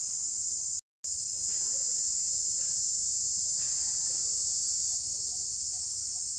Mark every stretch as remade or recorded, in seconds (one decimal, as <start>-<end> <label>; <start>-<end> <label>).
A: 0.0-6.4 recorded